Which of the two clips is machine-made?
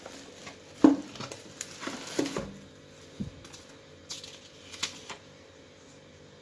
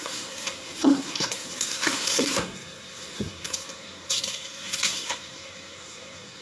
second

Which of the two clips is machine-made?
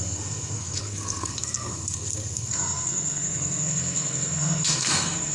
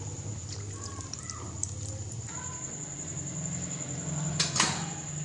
first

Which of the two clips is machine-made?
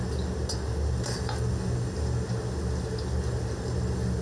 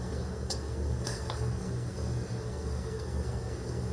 second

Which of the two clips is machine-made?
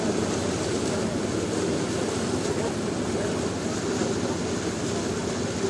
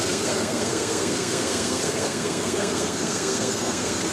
second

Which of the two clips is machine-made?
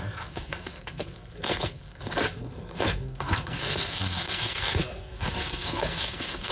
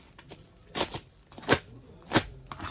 first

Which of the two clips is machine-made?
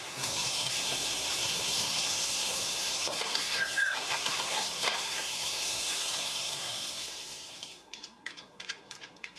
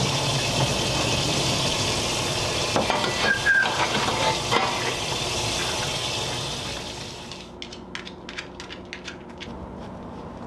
first